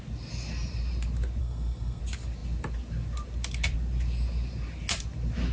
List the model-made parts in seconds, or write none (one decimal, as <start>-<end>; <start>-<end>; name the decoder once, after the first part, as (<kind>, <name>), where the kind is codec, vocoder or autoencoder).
1.4-2.0 (codec, SNAC)